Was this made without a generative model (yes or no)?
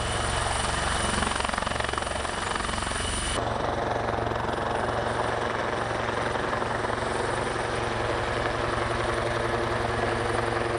yes